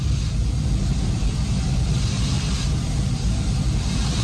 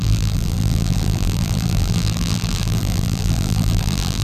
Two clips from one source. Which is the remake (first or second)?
second